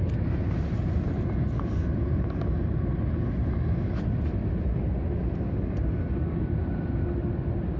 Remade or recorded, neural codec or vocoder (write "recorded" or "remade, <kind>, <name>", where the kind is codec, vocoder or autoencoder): recorded